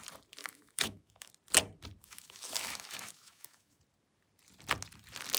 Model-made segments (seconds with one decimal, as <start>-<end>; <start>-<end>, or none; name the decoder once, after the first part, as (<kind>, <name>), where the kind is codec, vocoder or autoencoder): 0.4-1.3 (autoencoder, DAC-VAE); 2.0-3.8